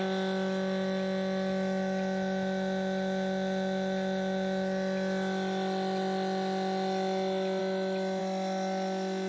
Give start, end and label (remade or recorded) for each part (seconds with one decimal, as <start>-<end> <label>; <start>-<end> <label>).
0.0-9.3 recorded